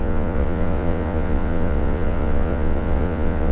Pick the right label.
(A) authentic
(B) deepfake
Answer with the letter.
B